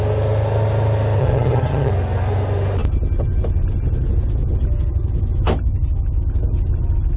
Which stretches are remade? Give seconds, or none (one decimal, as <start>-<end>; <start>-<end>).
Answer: 1.2-1.9